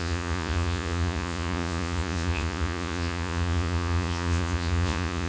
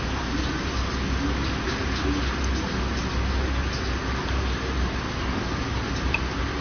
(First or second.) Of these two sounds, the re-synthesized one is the first